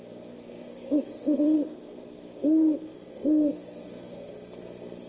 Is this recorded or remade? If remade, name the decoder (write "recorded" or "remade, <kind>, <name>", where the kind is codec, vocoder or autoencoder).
remade, codec, SNAC